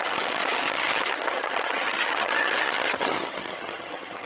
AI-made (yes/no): yes